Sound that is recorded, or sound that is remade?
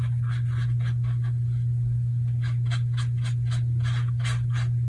recorded